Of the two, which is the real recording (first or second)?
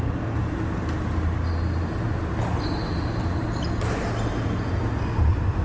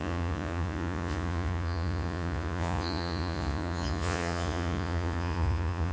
first